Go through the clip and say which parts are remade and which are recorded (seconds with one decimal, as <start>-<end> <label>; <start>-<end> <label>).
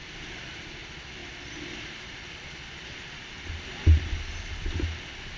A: 0.0-5.4 recorded